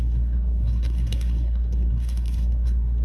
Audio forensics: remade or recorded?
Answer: remade